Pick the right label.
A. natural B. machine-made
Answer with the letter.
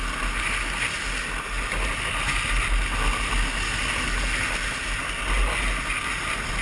A